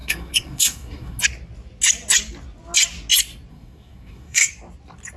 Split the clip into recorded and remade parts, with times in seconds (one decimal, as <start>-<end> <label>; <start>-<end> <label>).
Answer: 0.0-1.2 remade; 1.2-3.5 recorded; 3.5-4.5 remade; 4.5-5.2 recorded